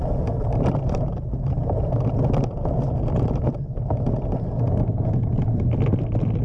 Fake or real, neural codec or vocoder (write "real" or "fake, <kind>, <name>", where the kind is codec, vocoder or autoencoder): real